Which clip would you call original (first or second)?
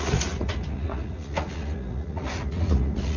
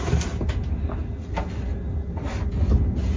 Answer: second